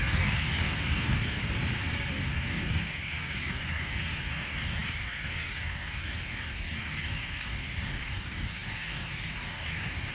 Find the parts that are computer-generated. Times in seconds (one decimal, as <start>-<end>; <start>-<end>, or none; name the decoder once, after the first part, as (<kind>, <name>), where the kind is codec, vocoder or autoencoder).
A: 0.0-1.4 (codec, DAC); 2.1-10.1